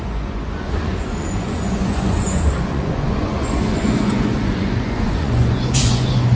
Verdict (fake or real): fake